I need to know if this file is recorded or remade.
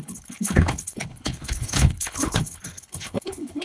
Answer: remade